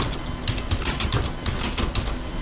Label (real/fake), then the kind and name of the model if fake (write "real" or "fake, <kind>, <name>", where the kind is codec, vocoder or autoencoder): real